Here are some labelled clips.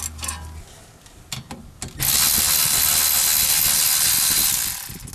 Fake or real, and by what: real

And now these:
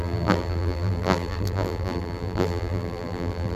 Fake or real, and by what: fake, vocoder, BigVGAN v2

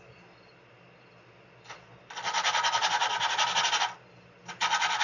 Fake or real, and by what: real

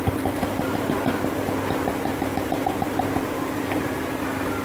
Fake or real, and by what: real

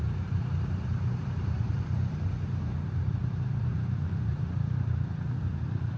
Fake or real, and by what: fake, vocoder, BigVGAN v2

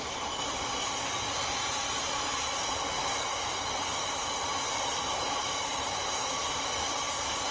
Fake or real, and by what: fake, vocoder, BigVGAN v2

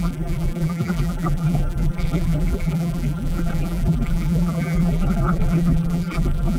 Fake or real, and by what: fake, vocoder, BigVGAN v2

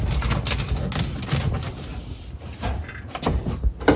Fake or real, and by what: real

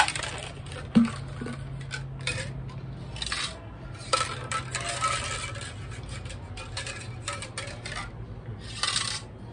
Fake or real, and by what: real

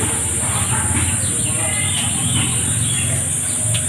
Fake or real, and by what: real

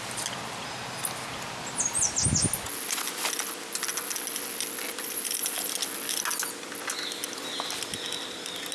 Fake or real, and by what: real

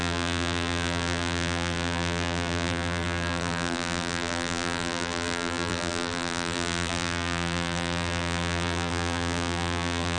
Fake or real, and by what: fake, vocoder, BigVGAN v2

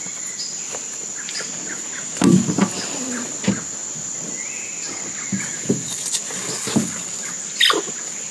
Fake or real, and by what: real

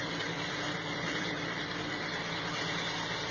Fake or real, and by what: fake, vocoder, BigVGAN v2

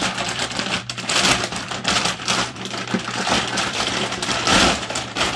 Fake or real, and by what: fake, vocoder, BigVGAN v2